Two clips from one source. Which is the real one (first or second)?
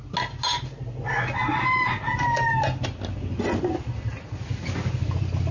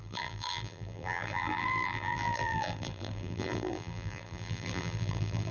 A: first